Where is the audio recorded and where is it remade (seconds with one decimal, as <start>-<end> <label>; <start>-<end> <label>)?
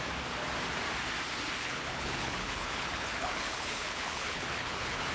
0.0-1.6 recorded; 1.6-5.1 remade